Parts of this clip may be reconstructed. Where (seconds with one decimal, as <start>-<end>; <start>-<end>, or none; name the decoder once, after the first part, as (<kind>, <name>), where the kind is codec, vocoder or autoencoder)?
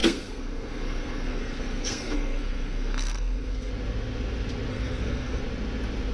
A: 0.0-3.7 (codec, SNAC); 4.7-5.4